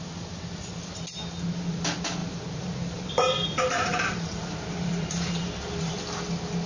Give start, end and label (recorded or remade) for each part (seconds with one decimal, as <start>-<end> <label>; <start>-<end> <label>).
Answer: 0.0-2.2 recorded; 2.2-6.0 remade; 6.0-6.7 recorded